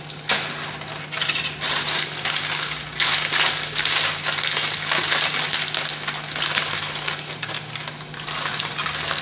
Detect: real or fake real